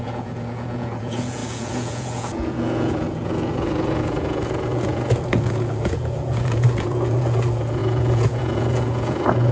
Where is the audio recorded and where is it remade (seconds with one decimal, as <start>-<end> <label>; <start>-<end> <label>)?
0.0-9.5 remade